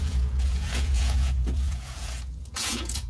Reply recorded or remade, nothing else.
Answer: remade